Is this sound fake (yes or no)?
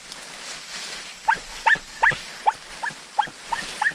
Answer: no